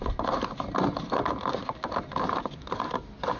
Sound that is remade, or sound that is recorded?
recorded